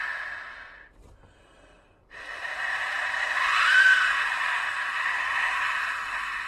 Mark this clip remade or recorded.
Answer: recorded